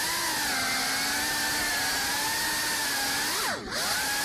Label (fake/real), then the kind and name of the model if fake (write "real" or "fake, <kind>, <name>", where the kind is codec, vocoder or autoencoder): real